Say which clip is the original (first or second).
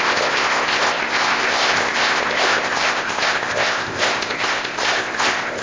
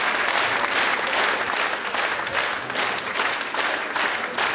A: second